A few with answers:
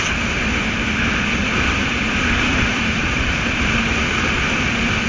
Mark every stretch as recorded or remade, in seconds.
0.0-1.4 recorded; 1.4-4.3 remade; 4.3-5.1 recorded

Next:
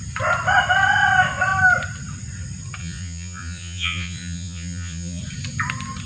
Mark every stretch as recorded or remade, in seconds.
0.0-2.8 recorded; 2.8-5.2 remade; 5.2-6.1 recorded

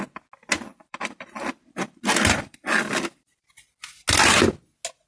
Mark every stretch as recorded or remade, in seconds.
0.0-0.7 recorded; 0.7-3.7 remade; 3.7-5.1 recorded

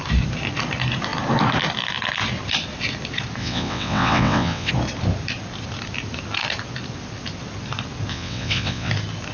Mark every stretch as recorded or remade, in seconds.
0.0-3.4 recorded; 3.4-4.7 remade; 4.7-8.1 recorded; 8.1-8.9 remade; 8.9-9.3 recorded